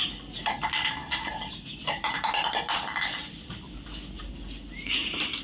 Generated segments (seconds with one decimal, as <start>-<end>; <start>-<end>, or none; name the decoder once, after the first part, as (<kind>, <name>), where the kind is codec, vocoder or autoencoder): none